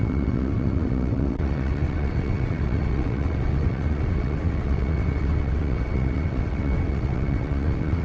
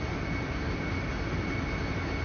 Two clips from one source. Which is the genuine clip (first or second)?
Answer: second